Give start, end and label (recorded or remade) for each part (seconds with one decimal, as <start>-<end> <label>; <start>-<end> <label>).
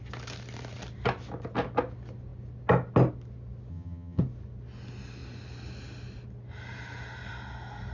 0.0-3.7 recorded; 3.7-4.2 remade; 4.2-7.9 recorded